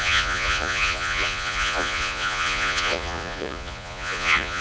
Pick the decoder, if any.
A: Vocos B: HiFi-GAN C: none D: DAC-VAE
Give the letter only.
A